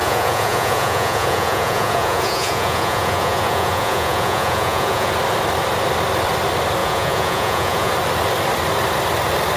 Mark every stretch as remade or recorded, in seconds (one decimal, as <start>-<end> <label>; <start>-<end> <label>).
0.0-5.1 remade; 5.1-6.8 recorded; 6.8-7.9 remade; 7.9-9.6 recorded